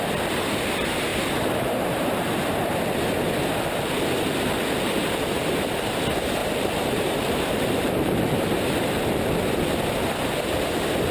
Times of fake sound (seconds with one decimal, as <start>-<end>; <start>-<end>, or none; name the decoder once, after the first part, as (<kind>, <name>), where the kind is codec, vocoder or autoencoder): 1.1-2.7 (vocoder, BigVGAN v2); 6.4-9.2

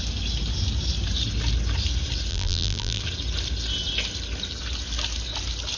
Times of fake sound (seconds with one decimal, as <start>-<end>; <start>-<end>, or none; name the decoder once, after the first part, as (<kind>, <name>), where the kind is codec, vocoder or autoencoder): 2.3-3.0 (vocoder, BigVGAN v2)

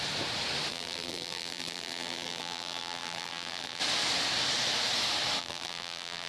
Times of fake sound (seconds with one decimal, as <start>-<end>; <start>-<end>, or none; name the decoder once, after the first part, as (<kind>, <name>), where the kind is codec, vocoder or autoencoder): 0.7-3.8 (vocoder, BigVGAN v2); 5.4-6.3